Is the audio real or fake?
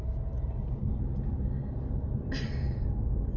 real